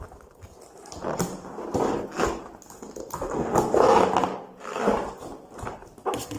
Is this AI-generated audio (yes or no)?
no